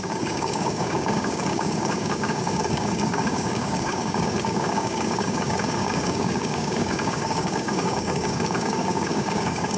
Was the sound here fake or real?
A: fake